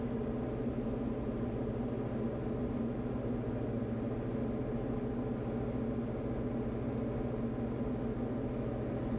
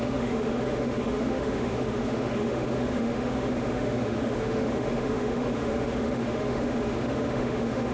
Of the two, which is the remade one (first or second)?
second